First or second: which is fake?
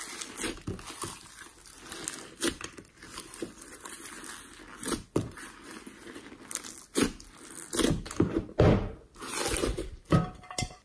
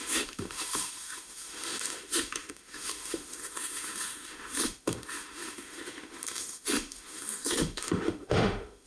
second